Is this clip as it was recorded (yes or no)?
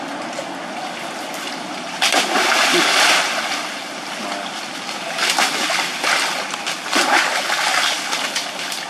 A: yes